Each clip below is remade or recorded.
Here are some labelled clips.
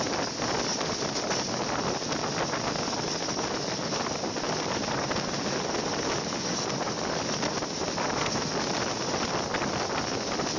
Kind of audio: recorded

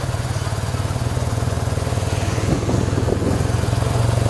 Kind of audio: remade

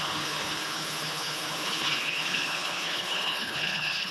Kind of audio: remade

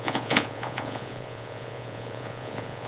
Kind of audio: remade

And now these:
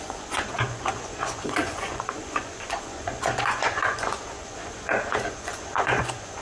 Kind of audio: remade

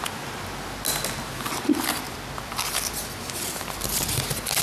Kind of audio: recorded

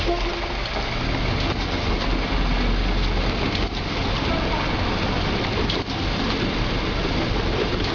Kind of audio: recorded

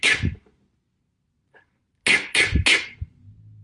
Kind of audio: recorded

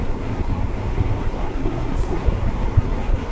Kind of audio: remade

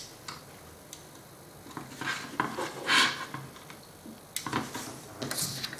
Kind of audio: recorded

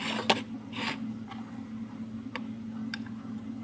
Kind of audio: recorded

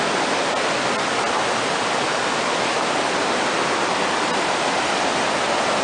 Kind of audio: recorded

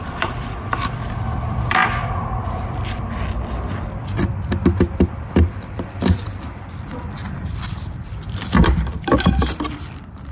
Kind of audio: remade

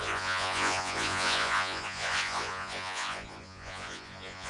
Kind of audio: remade